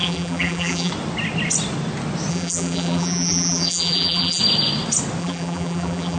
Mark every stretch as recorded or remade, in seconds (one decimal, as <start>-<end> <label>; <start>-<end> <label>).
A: 0.0-0.9 remade; 0.9-2.3 recorded; 2.3-4.4 remade; 4.4-5.2 recorded; 5.2-6.2 remade